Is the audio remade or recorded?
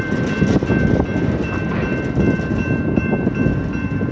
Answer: remade